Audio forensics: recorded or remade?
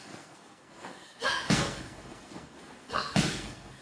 remade